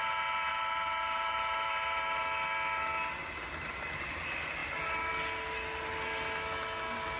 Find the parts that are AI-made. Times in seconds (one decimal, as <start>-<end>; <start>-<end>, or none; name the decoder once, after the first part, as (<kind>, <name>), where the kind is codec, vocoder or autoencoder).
0.5-2.2 (vocoder, BigVGAN v2)